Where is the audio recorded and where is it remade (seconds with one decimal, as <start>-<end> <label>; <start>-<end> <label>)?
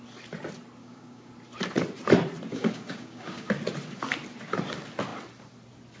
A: 0.0-0.8 recorded; 0.8-1.3 remade; 1.3-2.5 recorded; 2.5-3.5 remade; 3.5-6.0 recorded